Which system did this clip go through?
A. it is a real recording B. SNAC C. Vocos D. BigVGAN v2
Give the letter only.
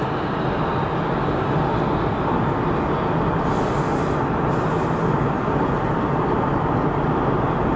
A